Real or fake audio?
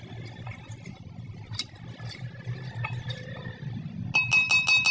real